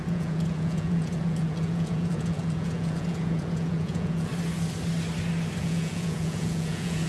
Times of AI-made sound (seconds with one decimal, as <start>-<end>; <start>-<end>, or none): 0.0-4.3; 5.6-7.1